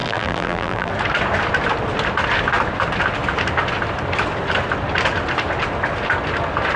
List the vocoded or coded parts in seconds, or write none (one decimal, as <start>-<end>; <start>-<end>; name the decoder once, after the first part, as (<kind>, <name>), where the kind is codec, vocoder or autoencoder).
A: 0.0-0.9 (vocoder, BigVGAN v2)